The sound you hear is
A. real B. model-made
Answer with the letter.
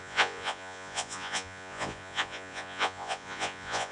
B